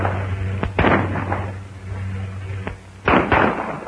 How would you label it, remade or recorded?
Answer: recorded